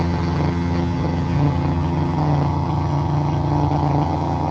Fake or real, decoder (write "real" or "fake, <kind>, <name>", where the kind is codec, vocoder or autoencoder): fake, vocoder, HiFi-GAN